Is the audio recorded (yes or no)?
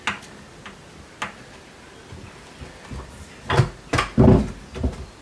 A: yes